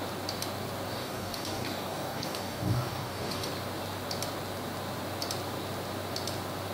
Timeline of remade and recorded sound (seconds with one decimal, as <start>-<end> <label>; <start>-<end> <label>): 0.0-0.9 recorded; 0.9-3.5 remade; 3.5-6.7 recorded